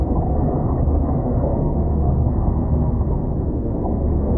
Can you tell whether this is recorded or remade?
remade